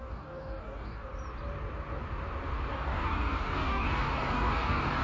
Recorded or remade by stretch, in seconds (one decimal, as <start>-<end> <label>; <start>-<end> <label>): 0.0-1.1 remade; 1.1-2.7 recorded; 2.7-5.0 remade